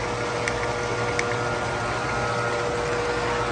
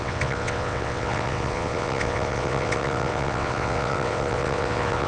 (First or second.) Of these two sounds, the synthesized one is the second